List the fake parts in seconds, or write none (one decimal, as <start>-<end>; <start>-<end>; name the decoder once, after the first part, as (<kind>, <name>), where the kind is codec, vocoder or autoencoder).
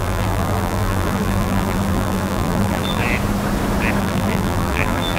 0.0-3.0 (vocoder, BigVGAN v2); 4.0-5.2